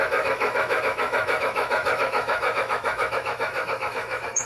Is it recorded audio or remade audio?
remade